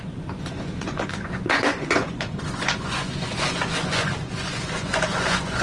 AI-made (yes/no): yes